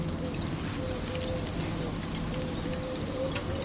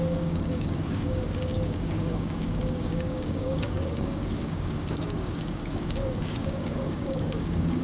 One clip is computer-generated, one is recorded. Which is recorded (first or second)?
first